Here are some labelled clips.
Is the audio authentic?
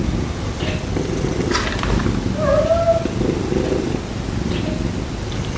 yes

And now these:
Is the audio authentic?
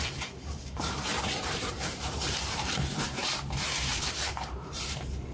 no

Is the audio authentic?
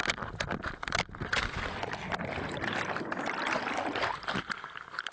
yes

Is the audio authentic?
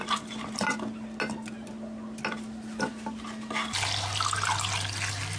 yes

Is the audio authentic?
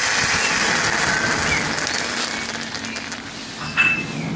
yes